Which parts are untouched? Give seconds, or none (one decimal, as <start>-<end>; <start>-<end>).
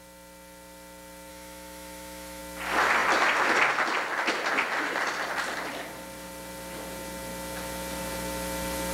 0.0-1.3; 2.4-8.9